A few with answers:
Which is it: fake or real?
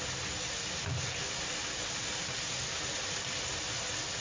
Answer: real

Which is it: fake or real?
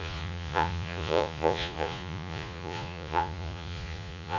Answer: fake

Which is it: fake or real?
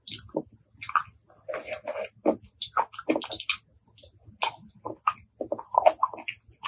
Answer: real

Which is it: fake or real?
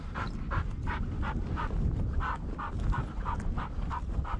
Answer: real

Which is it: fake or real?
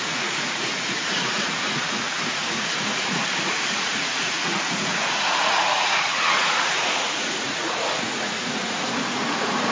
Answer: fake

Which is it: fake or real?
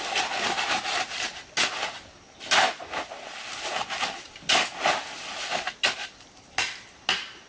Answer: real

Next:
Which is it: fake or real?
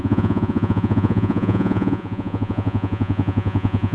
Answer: fake